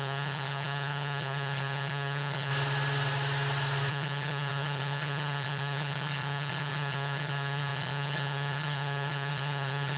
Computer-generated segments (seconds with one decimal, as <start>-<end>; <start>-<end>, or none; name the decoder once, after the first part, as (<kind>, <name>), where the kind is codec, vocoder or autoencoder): 0.0-2.5 (vocoder, HiFi-GAN); 3.9-10.0